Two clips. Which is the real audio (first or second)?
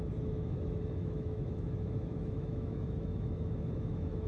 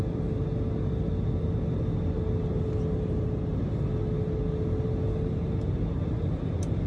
second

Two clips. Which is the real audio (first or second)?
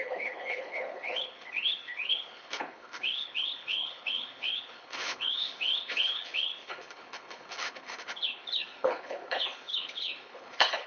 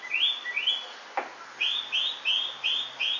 second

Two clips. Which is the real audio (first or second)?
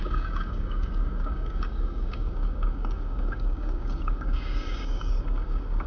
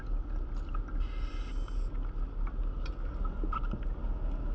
second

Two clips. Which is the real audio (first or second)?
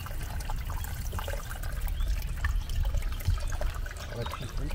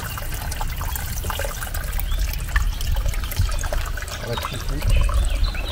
second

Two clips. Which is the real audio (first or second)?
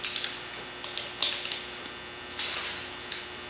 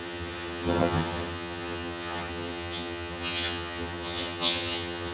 first